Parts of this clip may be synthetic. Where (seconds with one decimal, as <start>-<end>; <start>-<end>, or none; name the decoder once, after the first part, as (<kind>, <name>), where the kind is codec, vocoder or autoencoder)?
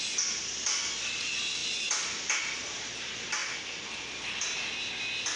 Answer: 0.0-5.4 (vocoder, BigVGAN v2)